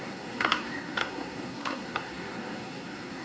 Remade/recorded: remade